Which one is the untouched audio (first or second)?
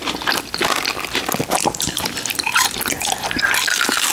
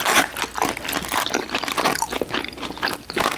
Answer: second